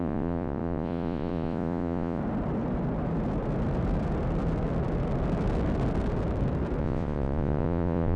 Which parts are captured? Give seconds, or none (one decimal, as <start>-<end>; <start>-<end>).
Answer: 2.2-6.8